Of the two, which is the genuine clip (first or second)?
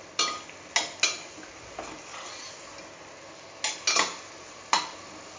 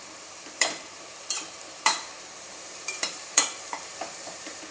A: first